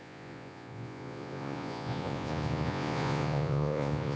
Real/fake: fake